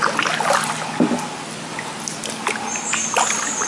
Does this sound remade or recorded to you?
recorded